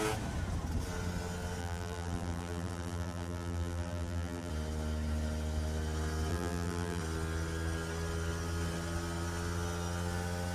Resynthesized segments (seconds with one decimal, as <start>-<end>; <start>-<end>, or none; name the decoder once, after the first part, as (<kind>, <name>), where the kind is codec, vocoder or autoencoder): 1.6-4.5 (vocoder, BigVGAN v2); 6.3-7.0